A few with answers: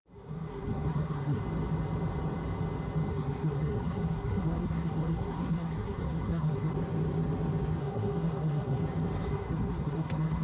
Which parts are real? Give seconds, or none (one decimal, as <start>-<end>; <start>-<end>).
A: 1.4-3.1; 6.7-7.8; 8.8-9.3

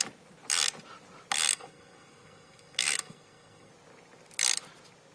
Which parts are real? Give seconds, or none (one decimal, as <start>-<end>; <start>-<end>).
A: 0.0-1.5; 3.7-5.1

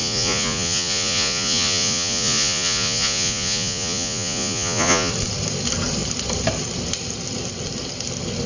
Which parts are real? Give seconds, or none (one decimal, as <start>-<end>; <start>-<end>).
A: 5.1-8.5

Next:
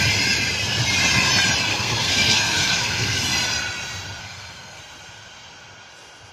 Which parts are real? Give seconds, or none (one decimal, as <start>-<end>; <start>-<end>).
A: 0.0-1.7; 3.2-4.2; 4.8-6.3

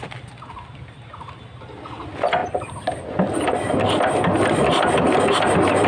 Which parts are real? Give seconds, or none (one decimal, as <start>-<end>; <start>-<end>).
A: 0.0-5.9

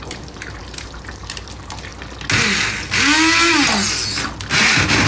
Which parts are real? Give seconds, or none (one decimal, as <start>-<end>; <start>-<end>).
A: 1.9-4.5